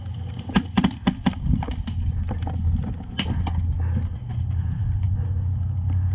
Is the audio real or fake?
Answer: real